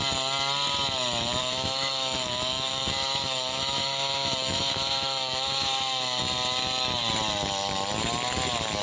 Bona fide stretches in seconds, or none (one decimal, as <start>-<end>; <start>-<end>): 0.0-1.4; 6.2-8.8